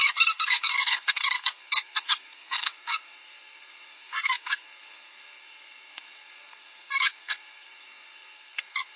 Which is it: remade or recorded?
remade